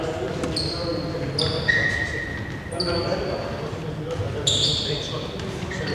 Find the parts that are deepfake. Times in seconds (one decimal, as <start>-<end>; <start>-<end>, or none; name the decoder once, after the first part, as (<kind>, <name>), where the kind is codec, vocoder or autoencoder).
none